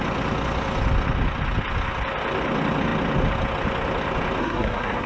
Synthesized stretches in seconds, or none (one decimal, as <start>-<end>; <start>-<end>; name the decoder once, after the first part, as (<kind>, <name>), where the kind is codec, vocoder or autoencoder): 4.4-5.1 (codec, SNAC)